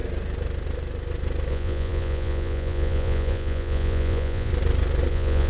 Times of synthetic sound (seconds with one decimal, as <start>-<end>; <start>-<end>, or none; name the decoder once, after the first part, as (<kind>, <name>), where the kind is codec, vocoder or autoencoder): 1.5-4.5 (vocoder, Vocos); 5.1-5.5